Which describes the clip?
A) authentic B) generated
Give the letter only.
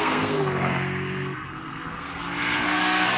B